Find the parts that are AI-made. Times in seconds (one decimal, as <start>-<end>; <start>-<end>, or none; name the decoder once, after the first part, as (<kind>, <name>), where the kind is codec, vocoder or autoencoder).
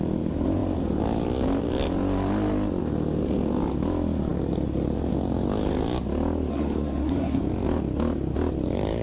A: 6.5-7.4 (codec, SNAC)